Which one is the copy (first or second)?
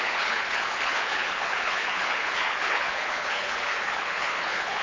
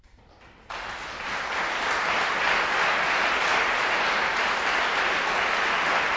first